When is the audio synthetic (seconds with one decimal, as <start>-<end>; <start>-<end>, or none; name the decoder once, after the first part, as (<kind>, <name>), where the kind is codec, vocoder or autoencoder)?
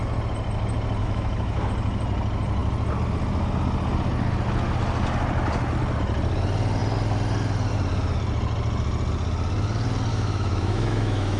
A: 1.0-1.7 (autoencoder, DAC-VAE); 10.1-11.4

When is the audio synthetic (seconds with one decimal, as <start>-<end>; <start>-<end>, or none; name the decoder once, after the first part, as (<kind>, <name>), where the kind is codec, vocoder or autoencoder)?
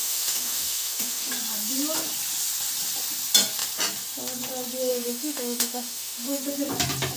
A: 0.0-1.3 (autoencoder, DAC-VAE); 4.9-6.4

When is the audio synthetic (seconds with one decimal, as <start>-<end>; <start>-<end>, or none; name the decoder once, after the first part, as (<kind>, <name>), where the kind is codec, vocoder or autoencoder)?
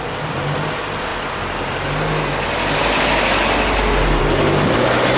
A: none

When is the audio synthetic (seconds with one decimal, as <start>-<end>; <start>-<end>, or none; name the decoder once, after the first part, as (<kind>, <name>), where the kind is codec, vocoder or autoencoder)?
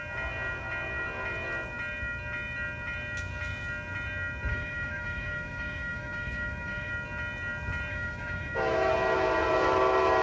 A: 4.5-6.9 (autoencoder, DAC-VAE); 7.9-8.9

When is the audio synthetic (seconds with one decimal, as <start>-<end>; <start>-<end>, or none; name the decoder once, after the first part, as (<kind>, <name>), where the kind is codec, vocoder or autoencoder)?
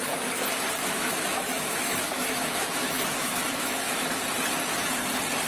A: 0.8-4.1 (autoencoder, DAC-VAE)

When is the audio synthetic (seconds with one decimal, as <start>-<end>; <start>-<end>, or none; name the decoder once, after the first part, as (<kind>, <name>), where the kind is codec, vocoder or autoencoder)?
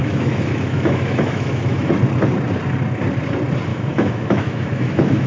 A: 0.0-1.9 (autoencoder, DAC-VAE); 3.7-5.3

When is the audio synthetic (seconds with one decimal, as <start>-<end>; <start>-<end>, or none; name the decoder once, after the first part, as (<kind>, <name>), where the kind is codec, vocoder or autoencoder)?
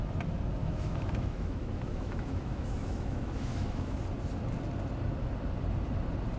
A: 0.6-4.0 (autoencoder, DAC-VAE)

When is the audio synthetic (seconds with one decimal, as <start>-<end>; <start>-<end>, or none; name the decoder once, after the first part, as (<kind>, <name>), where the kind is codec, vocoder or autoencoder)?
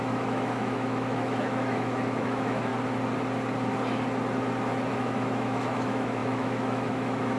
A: 0.0-2.7 (autoencoder, DAC-VAE); 4.9-7.4